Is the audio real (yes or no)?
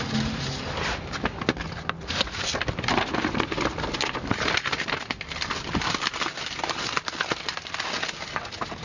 yes